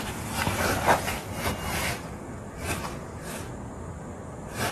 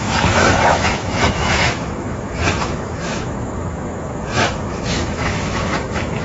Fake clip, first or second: second